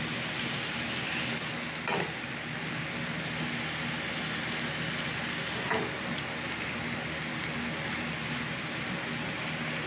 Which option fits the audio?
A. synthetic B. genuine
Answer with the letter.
B